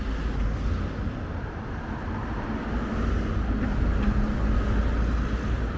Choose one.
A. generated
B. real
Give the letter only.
B